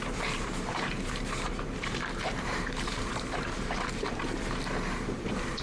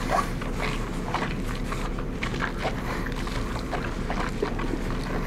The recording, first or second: second